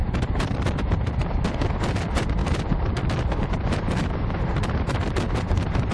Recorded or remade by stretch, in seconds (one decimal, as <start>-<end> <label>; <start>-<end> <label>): 0.0-5.9 recorded